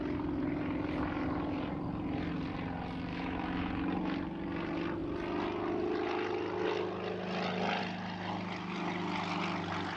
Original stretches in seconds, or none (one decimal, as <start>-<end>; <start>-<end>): 0.0-3.1; 3.7-10.0